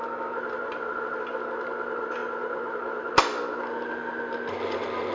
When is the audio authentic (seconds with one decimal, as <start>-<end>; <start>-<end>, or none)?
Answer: 0.0-5.1